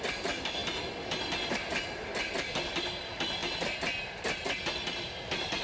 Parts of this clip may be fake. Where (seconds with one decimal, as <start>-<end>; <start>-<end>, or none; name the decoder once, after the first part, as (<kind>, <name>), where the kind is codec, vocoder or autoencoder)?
none